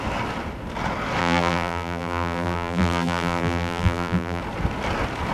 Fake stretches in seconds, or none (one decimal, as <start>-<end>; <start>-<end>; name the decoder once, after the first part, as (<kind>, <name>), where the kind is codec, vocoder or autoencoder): 1.2-4.4 (vocoder, BigVGAN v2)

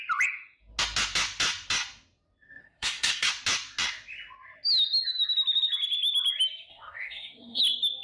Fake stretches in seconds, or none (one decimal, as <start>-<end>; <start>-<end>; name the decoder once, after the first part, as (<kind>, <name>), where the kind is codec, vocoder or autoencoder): 2.6-3.3 (codec, SNAC); 6.7-7.6

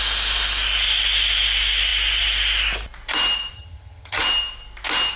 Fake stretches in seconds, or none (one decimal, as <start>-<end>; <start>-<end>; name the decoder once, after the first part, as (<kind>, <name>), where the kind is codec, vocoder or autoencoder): 3.5-4.2 (vocoder, HiFi-GAN)

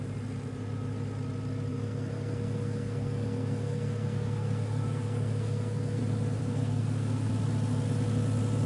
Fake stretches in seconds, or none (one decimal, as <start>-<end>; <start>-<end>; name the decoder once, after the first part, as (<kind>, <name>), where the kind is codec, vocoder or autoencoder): 1.7-6.0 (codec, SNAC); 6.4-7.3

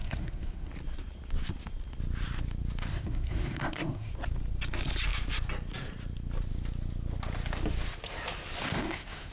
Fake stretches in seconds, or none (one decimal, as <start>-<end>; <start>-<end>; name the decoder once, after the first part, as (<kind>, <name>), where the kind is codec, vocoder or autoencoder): 0.0-0.7 (codec, SNAC); 2.9-4.1; 8.6-9.3

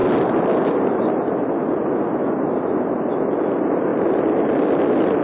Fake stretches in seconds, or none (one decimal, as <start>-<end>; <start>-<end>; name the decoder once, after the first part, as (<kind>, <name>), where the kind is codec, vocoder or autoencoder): none

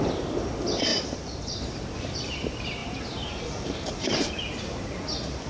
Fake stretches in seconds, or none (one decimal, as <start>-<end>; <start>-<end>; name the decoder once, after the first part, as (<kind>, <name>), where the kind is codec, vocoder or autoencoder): 0.9-1.6 (vocoder, BigVGAN v2); 2.8-4.3

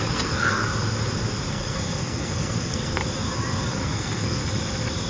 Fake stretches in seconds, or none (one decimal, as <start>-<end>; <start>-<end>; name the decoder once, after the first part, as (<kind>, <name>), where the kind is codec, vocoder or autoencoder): 0.0-0.6 (codec, SNAC); 1.5-3.0; 3.8-4.4